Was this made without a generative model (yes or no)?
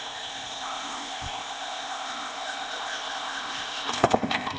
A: no